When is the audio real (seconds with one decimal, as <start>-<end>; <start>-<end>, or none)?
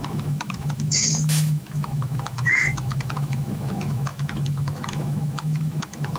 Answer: none